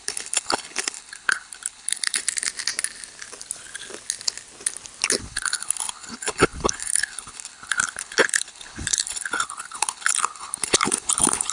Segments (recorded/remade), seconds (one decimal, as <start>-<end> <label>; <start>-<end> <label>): 0.0-2.2 remade; 2.2-5.2 recorded; 5.2-11.5 remade